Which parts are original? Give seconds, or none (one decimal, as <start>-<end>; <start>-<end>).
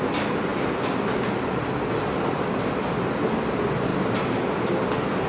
0.0-5.3